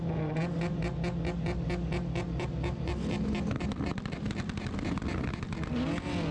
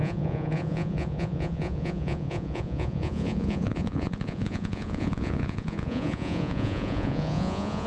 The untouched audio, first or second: first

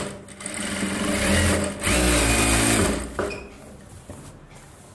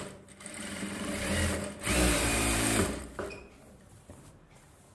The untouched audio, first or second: first